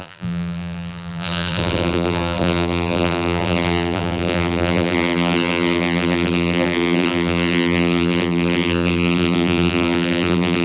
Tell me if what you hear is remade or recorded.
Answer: remade